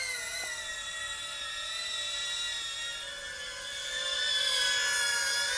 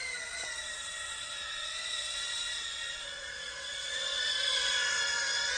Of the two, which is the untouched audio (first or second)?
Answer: first